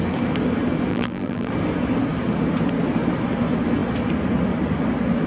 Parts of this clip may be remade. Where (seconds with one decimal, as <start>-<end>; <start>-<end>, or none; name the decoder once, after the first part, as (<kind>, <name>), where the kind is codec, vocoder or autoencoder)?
0.9-1.5 (vocoder, BigVGAN v2)